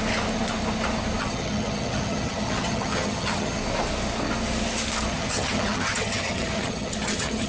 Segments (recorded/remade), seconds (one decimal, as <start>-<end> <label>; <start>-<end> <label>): 0.0-1.2 recorded; 1.2-3.6 remade; 3.6-5.1 recorded; 5.1-7.5 remade